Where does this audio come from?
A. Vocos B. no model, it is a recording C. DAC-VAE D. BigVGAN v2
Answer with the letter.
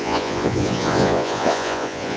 A